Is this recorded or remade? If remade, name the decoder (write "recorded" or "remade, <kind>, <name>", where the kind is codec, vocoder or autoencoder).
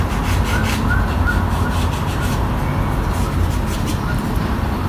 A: recorded